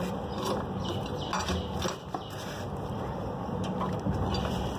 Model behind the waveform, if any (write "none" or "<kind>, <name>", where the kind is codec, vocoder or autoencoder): none